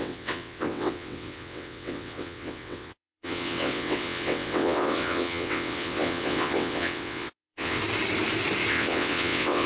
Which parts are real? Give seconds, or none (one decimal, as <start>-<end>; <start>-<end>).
7.8-8.7